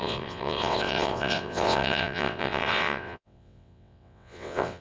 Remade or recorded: remade